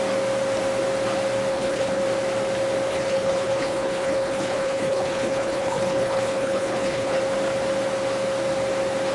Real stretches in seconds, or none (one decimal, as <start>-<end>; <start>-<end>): 0.0-1.5; 2.0-2.9; 7.2-9.1